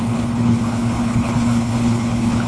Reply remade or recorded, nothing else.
remade